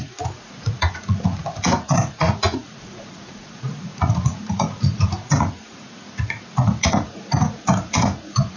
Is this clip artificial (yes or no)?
yes